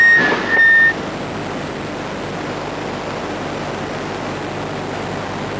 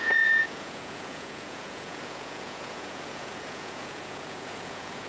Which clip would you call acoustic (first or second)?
first